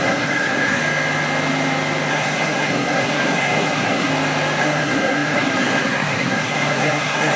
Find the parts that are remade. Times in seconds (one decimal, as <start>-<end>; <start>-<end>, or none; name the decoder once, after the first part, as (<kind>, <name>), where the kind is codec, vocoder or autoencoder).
0.0-0.8 (codec, SNAC); 2.1-4.1; 4.6-7.4